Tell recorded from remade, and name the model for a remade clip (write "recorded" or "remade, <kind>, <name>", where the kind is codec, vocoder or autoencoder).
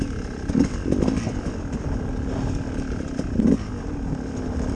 recorded